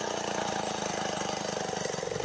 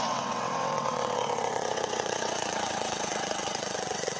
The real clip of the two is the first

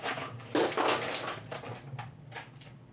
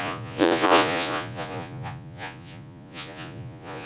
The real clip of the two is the first